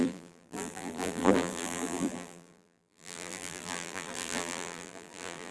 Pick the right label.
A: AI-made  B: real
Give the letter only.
A